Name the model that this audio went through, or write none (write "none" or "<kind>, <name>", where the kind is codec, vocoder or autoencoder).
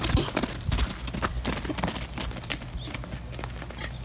none